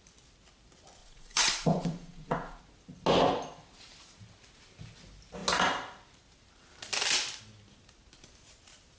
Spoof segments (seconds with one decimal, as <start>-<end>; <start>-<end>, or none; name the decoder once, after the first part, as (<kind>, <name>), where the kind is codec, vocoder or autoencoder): 1.0-2.6 (vocoder, Vocos)